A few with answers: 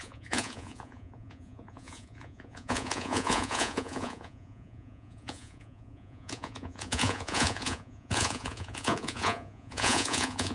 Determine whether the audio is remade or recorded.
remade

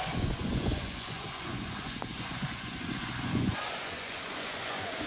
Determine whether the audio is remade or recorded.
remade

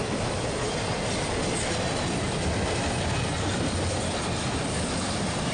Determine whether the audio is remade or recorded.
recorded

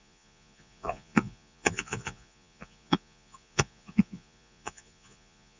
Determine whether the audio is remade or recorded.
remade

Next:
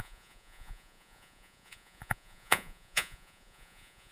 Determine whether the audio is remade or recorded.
remade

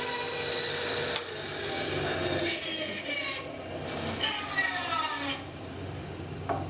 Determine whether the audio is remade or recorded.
recorded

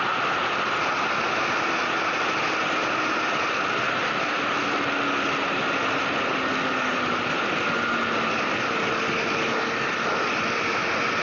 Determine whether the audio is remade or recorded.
recorded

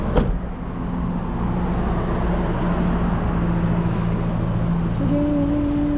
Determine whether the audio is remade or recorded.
recorded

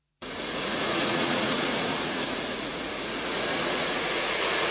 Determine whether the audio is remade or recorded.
remade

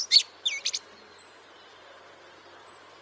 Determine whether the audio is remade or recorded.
recorded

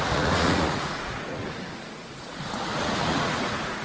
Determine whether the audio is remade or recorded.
remade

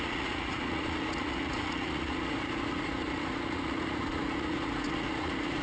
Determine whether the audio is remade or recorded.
remade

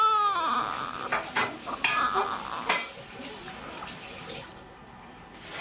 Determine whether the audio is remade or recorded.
recorded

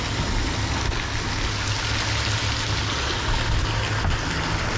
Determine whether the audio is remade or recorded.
recorded